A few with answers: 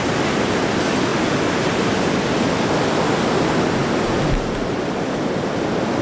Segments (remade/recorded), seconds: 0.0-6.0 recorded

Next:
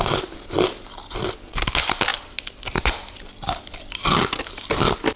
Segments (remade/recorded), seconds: 0.0-5.2 recorded

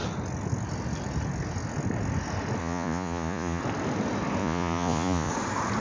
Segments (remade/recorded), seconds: 0.0-2.6 recorded; 2.6-3.6 remade; 3.6-4.4 recorded; 4.4-5.3 remade; 5.3-5.8 recorded

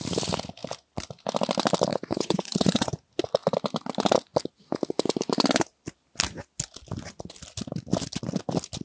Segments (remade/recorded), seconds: 0.0-1.9 recorded; 1.9-2.9 remade; 2.9-8.8 recorded

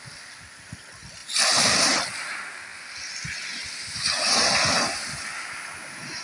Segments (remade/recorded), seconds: 0.0-6.2 recorded

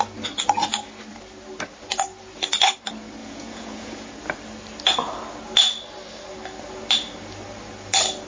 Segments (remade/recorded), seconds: 0.0-3.2 recorded; 3.2-4.1 remade; 4.1-8.3 recorded